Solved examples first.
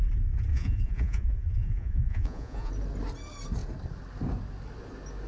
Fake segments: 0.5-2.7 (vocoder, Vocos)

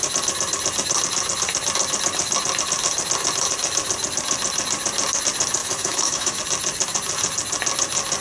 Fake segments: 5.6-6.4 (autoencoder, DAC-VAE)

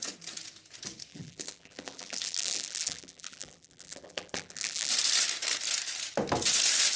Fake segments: 1.1-4.9 (vocoder, BigVGAN v2)

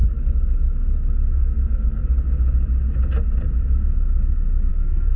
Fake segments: 1.3-2.0 (codec, SNAC); 4.7-5.2

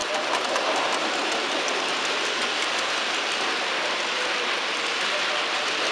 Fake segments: none

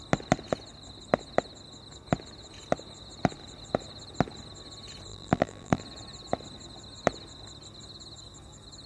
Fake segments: 5.1-5.8 (vocoder, BigVGAN v2)